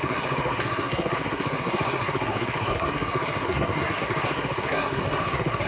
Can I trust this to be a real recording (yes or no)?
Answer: no